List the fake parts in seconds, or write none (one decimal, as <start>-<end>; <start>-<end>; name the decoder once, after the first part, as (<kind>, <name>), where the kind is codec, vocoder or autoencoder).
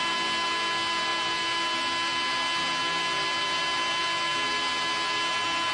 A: none